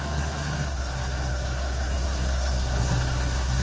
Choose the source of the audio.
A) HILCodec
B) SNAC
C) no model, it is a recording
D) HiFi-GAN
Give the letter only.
B